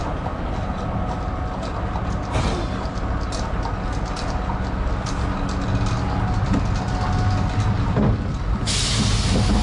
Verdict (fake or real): real